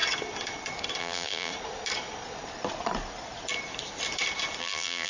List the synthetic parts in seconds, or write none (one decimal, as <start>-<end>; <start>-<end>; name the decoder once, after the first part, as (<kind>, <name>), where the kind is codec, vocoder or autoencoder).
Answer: 1.0-1.5 (vocoder, BigVGAN v2); 4.6-5.1